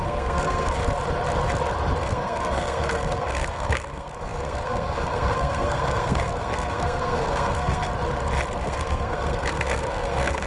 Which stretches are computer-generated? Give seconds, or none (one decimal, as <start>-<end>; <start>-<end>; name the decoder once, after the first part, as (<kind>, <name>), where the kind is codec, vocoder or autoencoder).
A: 0.0-0.8 (codec, SNAC); 2.0-7.9; 8.6-10.5